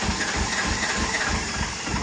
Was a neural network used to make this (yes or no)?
no